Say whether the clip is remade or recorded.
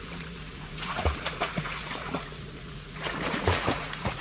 remade